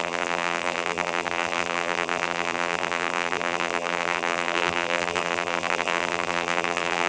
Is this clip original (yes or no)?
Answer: no